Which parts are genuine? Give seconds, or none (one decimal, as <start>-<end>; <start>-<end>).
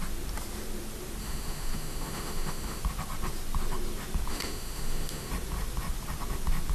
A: 0.0-1.2; 2.8-4.3; 5.3-6.7